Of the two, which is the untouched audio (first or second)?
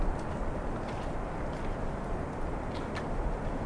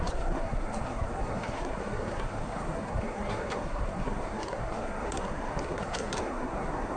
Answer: first